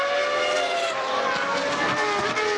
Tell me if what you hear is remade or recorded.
recorded